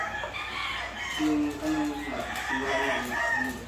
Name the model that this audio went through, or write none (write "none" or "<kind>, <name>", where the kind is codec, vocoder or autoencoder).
none